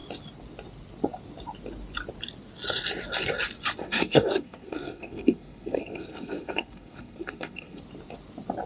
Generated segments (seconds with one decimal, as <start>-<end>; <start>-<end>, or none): 3.8-7.8